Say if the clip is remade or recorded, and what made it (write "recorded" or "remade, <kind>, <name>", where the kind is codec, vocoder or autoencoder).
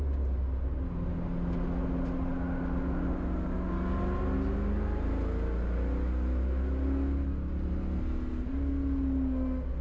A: recorded